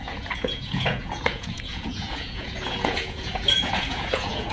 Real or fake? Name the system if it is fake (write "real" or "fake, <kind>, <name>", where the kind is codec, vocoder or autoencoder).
fake, vocoder, Vocos